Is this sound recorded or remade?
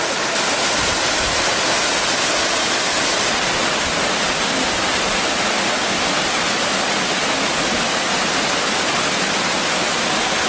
recorded